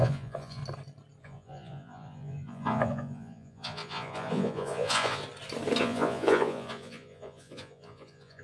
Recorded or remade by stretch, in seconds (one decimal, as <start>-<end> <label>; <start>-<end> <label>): 0.0-0.6 remade; 0.6-1.2 recorded; 1.2-5.2 remade; 5.2-5.8 recorded; 5.8-8.4 remade